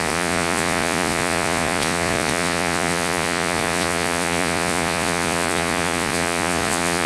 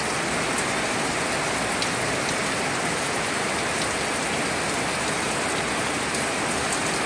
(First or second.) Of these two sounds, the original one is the second